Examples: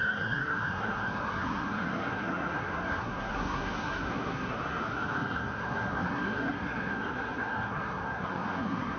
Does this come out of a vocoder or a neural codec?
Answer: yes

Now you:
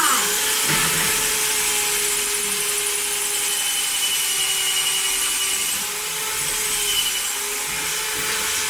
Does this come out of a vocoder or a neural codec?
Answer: no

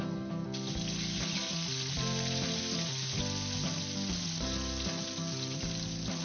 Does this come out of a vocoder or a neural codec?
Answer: no